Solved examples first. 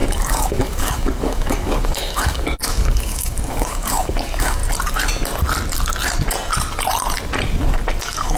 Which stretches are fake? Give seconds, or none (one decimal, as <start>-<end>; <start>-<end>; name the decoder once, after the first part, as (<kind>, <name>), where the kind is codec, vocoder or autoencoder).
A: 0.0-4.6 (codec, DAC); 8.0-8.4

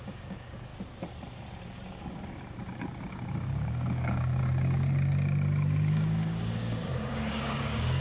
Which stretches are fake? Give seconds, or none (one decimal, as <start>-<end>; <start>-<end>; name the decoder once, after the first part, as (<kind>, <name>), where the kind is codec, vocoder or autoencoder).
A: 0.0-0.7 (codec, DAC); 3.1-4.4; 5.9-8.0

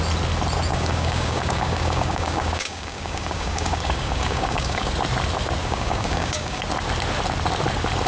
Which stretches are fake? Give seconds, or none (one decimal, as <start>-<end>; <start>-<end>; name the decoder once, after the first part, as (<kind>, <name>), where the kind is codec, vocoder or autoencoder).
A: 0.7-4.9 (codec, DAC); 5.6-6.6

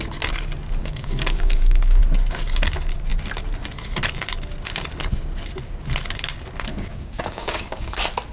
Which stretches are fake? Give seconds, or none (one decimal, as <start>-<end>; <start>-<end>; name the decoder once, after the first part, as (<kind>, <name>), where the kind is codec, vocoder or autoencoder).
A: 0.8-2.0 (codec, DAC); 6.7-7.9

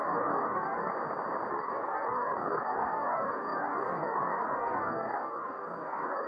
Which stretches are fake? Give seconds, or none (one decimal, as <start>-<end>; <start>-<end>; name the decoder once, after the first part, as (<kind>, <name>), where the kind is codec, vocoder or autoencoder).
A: 0.0-0.9 (codec, DAC); 1.5-6.3

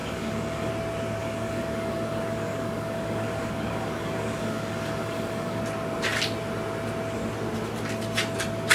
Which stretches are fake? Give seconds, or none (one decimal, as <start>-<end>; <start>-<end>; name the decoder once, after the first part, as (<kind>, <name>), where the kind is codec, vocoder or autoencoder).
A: 0.0-0.7 (codec, DAC); 1.2-5.6